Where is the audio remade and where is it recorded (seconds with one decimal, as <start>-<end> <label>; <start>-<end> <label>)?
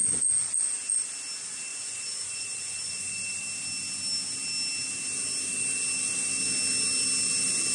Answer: 0.0-0.9 remade; 0.9-1.7 recorded; 1.7-3.4 remade; 3.4-7.7 recorded